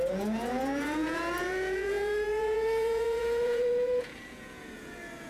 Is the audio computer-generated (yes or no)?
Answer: yes